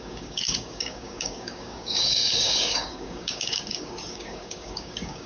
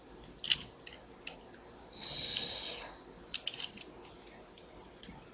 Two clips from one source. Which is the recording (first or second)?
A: second